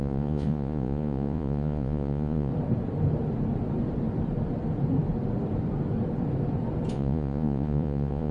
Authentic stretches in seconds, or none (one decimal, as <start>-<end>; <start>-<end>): 2.5-6.9